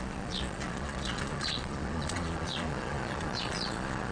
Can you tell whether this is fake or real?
fake